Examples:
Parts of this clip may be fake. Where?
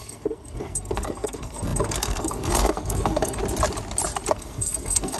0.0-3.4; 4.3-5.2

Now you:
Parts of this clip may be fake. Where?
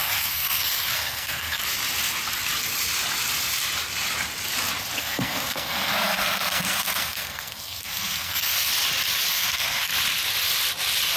0.0-1.6; 5.0-8.7; 9.3-9.9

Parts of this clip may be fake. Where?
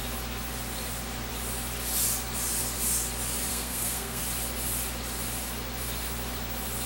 3.5-4.2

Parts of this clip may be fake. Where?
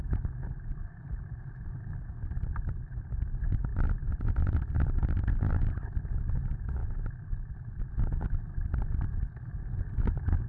none